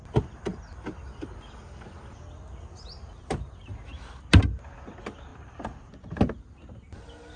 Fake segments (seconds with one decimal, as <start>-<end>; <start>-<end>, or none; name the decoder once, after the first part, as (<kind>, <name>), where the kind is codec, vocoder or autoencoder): none